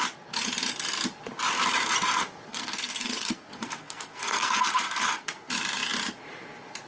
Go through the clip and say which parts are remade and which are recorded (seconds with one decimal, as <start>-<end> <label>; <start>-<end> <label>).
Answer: 0.0-2.5 recorded; 2.5-5.5 remade; 5.5-6.9 recorded